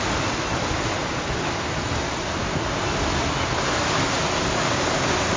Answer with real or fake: real